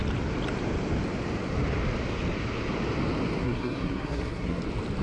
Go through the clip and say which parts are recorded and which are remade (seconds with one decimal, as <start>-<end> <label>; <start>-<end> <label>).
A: 0.0-3.4 recorded; 3.4-4.6 remade; 4.6-5.0 recorded